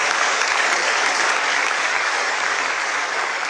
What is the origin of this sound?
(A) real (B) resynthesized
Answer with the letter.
B